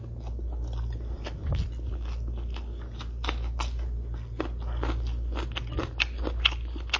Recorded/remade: recorded